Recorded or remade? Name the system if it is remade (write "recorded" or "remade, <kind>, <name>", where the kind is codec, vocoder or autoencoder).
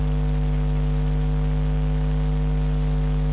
recorded